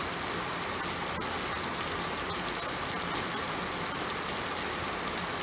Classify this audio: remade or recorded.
recorded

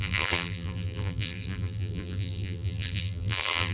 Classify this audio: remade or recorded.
remade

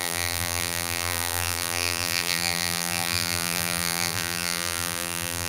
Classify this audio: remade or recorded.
remade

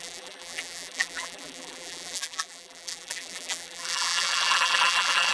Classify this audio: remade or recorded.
remade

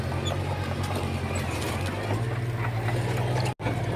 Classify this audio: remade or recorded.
recorded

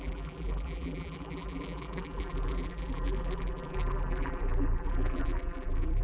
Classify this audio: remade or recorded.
remade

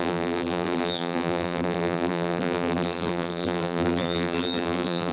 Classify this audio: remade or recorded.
remade